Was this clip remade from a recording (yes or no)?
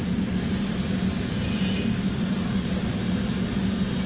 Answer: no